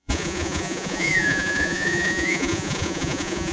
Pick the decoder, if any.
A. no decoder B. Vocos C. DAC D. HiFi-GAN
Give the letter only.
B